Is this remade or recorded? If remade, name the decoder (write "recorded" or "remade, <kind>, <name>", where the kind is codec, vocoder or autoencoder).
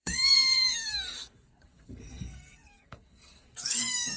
remade, codec, SNAC